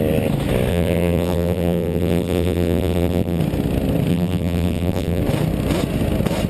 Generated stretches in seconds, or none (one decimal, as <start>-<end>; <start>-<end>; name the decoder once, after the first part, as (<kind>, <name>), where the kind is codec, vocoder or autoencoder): 0.7-3.4 (vocoder, BigVGAN v2); 4.1-5.2